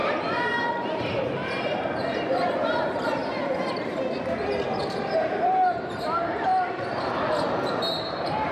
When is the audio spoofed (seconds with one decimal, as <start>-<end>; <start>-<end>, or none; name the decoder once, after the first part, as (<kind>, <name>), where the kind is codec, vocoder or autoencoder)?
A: 0.7-1.4 (vocoder, BigVGAN v2); 2.1-3.2; 4.8-8.5